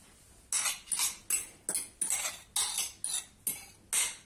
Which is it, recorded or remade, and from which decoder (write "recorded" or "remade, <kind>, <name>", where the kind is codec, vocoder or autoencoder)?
recorded